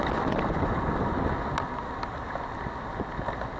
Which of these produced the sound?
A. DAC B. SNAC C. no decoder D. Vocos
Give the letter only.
C